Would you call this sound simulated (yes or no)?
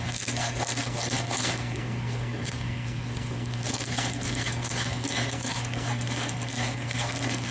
yes